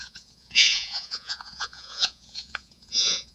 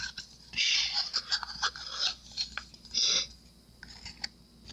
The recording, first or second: second